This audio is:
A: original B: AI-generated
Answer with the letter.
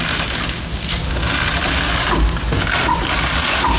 A